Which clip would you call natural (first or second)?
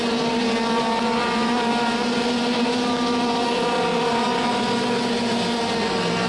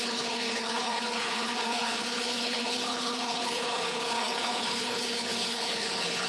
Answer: first